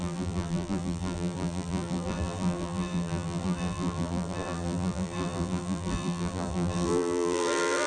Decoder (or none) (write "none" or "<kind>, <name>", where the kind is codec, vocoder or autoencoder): vocoder, BigVGAN v2